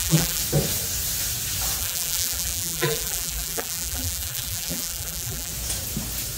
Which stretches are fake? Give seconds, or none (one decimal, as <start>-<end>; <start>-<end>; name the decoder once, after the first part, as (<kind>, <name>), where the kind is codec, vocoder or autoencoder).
0.0-0.4 (vocoder, BigVGAN v2); 1.8-5.5